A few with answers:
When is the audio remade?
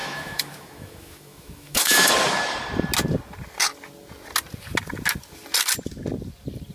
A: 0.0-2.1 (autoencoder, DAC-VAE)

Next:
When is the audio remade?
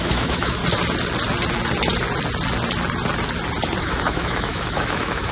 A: 0.0-0.6 (autoencoder, DAC-VAE); 3.8-5.3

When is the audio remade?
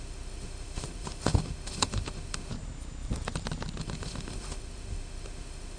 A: 0.0-2.5 (autoencoder, DAC-VAE); 3.8-5.8